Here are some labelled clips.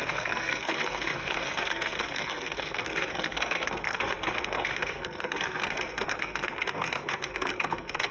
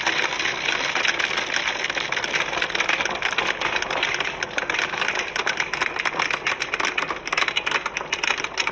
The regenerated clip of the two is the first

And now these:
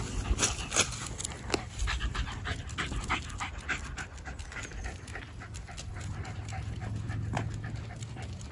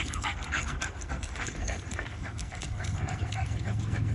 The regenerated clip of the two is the second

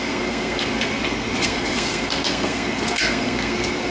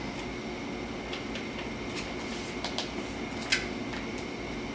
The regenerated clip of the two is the first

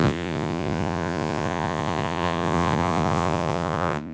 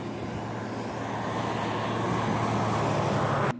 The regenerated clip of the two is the first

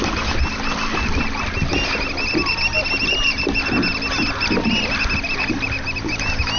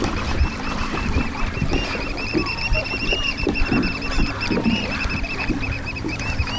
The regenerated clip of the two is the second